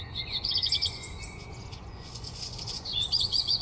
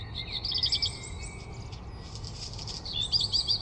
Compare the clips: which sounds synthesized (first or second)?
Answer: first